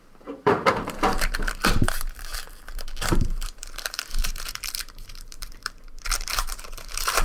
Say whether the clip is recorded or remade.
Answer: remade